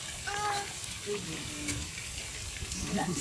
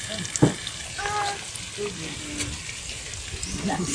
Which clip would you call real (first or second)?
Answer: second